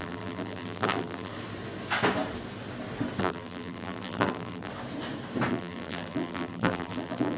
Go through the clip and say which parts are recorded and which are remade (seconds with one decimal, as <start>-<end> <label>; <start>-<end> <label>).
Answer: 0.0-1.3 remade; 1.3-3.2 recorded; 3.2-4.7 remade; 4.7-5.5 recorded; 5.5-7.4 remade